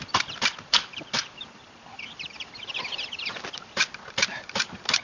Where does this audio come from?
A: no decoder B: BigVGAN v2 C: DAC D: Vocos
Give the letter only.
B